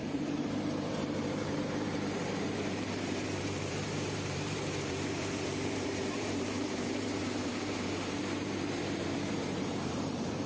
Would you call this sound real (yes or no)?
no